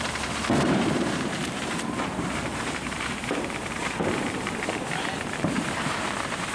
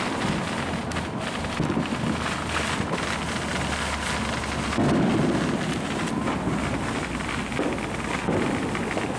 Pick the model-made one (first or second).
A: first